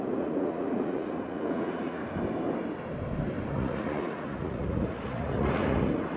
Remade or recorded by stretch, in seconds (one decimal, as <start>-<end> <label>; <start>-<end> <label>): 0.0-2.0 remade; 2.0-3.5 recorded; 3.5-6.2 remade